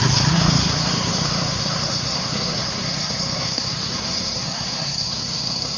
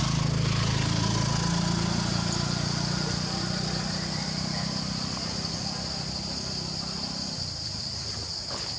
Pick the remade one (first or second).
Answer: first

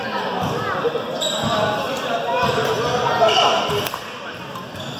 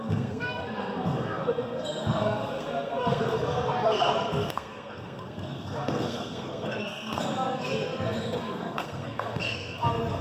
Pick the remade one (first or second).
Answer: second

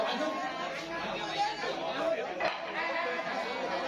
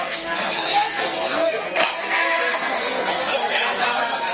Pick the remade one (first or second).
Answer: second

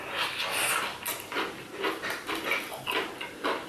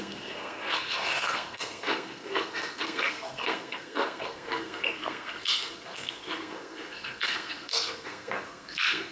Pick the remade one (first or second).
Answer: second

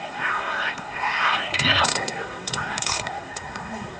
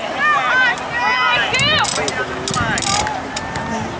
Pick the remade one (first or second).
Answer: first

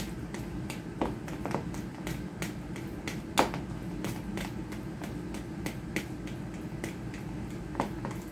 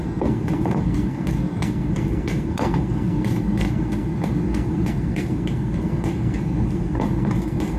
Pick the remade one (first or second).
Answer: second